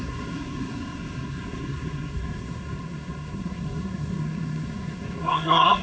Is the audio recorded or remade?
remade